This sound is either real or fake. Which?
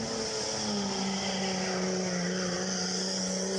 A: real